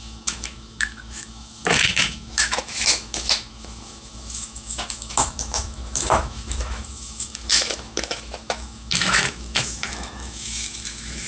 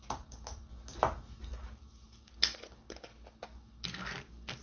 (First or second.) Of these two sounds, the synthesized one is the first